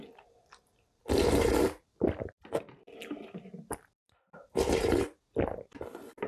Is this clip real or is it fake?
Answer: real